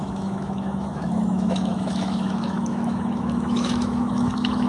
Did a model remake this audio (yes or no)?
yes